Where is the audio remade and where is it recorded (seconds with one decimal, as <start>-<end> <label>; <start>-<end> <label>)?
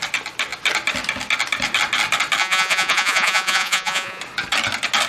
0.0-2.4 recorded; 2.4-4.2 remade; 4.2-5.1 recorded